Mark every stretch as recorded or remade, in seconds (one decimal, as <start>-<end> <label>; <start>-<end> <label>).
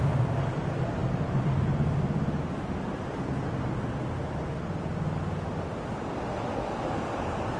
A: 0.0-7.6 recorded